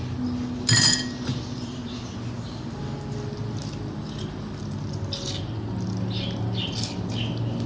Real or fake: real